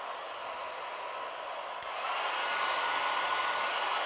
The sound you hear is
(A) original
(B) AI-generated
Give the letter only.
A